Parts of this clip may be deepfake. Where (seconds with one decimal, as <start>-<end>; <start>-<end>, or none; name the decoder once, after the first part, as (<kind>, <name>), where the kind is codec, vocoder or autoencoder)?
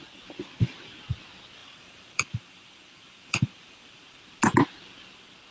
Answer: 1.6-4.2 (vocoder, BigVGAN v2)